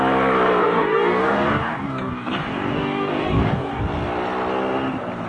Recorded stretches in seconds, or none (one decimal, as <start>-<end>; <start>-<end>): 0.0-0.6; 3.8-5.3